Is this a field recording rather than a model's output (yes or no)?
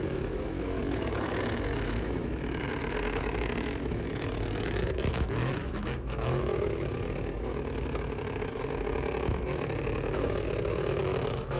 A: no